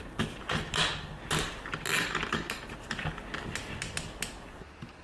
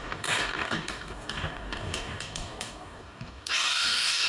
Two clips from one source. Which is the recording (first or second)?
first